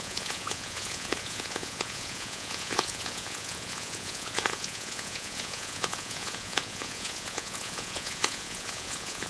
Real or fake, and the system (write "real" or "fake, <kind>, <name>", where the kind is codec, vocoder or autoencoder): fake, vocoder, Vocos